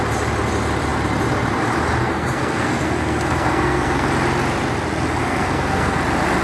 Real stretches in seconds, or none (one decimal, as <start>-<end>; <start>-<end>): 0.0-2.0; 4.1-5.2; 6.0-6.4